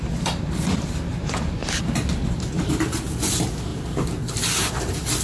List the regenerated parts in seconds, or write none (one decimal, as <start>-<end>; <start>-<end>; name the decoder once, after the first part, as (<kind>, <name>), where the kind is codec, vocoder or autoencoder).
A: none